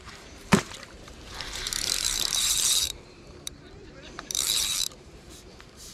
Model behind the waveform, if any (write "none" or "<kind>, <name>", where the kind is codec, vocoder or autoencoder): vocoder, BigVGAN v2